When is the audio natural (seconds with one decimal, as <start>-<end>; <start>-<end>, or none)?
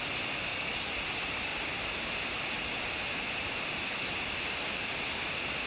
0.0-0.5; 1.0-5.7